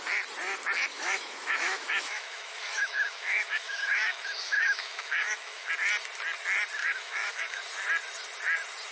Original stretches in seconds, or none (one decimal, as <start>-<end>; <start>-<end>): 0.0-0.9; 5.7-6.8; 7.6-8.9